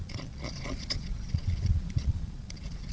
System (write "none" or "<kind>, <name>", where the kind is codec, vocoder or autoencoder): vocoder, Vocos